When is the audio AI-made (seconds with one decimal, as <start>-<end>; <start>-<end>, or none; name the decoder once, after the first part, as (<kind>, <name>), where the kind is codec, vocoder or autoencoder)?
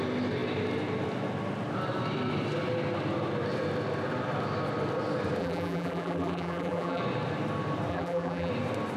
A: 5.4-7.0 (vocoder, BigVGAN v2); 7.9-8.5